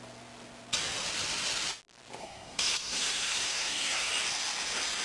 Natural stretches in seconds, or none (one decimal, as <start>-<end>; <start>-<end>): 0.0-2.2; 4.1-5.0